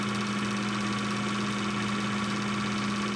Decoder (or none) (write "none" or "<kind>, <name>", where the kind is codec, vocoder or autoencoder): none